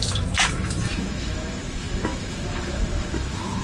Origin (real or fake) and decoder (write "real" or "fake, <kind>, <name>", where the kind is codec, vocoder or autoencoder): fake, autoencoder, DAC-VAE